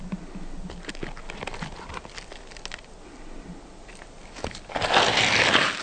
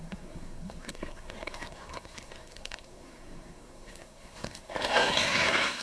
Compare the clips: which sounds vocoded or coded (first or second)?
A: second